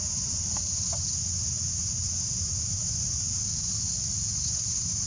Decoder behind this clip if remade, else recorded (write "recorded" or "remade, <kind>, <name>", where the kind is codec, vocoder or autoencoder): recorded